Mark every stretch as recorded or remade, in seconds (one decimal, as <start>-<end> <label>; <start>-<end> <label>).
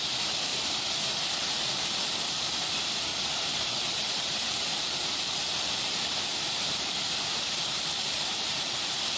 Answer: 0.0-3.1 remade; 3.1-4.5 recorded; 4.5-9.2 remade